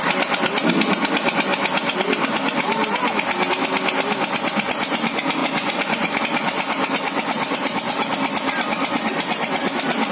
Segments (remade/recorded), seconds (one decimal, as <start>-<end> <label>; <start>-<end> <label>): 0.0-5.4 recorded; 5.4-6.2 remade; 6.2-10.1 recorded